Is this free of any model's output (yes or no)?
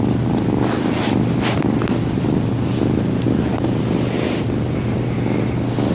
yes